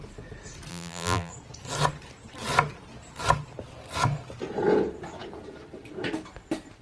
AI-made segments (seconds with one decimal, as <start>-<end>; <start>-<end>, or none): 0.7-1.3